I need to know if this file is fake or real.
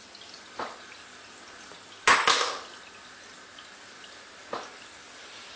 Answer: real